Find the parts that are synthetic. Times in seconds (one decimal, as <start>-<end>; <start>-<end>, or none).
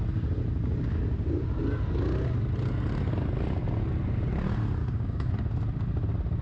4.8-5.3